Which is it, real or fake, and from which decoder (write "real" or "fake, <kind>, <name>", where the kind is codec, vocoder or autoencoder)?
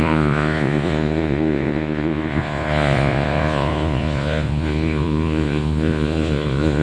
fake, vocoder, Vocos